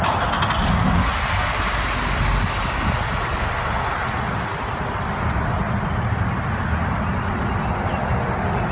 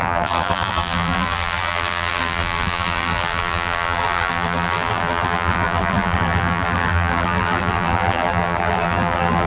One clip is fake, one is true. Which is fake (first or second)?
second